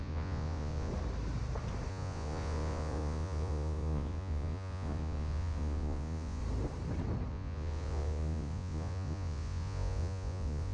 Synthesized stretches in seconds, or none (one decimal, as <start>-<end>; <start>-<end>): 0.0-0.9; 1.9-6.4; 7.3-10.7